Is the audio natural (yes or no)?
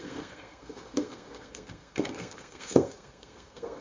no